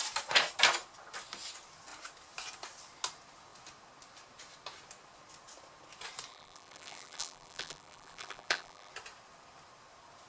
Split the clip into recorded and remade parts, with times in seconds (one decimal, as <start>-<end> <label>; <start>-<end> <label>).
0.0-6.3 recorded; 6.3-8.9 remade; 8.9-10.3 recorded